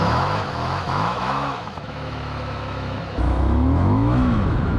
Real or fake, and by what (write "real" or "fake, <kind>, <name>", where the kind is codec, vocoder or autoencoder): fake, autoencoder, DAC-VAE